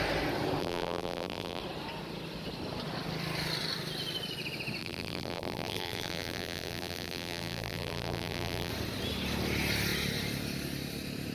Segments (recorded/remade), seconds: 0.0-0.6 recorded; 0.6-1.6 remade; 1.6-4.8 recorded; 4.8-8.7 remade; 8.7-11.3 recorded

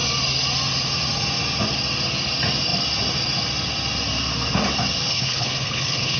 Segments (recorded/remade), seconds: 0.0-5.1 recorded; 5.1-6.2 remade

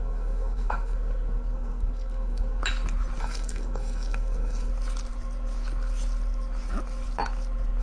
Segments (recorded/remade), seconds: 0.0-2.6 remade; 2.6-3.2 recorded; 3.2-4.7 remade; 4.7-7.8 recorded

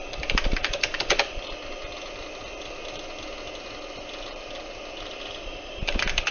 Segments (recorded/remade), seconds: 0.0-2.8 remade; 2.8-3.8 recorded; 3.8-6.3 remade

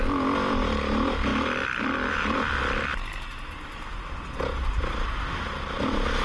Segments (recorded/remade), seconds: 0.0-6.2 recorded

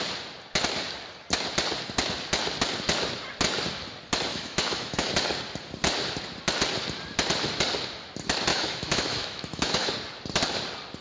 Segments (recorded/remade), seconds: 0.0-4.3 recorded; 4.3-5.1 remade; 5.1-8.5 recorded; 8.5-9.9 remade; 9.9-11.0 recorded

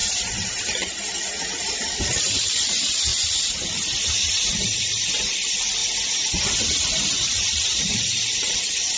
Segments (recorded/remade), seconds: 0.0-3.1 remade; 3.1-4.0 recorded; 4.0-5.8 remade; 5.8-6.8 recorded; 6.8-9.0 remade

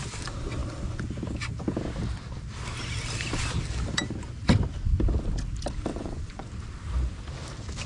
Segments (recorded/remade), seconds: 0.0-5.9 recorded; 5.9-6.5 remade; 6.5-7.9 recorded